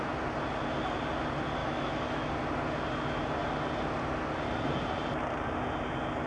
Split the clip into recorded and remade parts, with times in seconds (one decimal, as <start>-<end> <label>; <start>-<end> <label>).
0.0-1.6 recorded; 1.6-2.3 remade; 2.3-6.3 recorded